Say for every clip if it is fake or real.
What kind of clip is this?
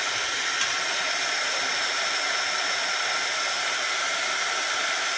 real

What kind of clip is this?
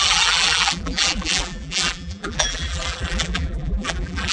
fake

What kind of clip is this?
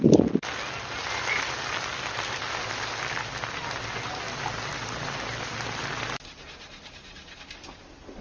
real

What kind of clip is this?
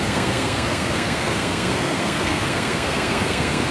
fake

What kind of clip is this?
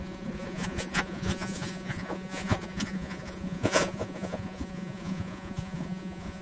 fake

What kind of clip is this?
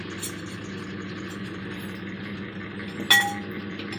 real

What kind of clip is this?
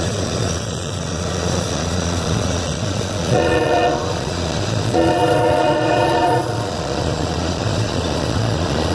fake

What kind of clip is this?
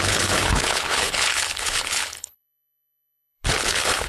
fake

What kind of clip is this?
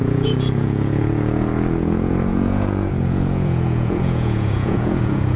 fake